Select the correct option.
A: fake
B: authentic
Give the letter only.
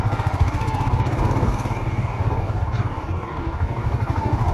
A